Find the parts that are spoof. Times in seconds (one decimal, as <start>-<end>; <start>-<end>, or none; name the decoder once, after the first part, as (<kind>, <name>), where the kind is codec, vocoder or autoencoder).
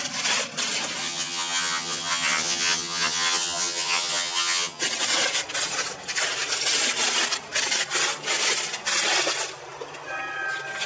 1.0-4.8 (vocoder, HiFi-GAN)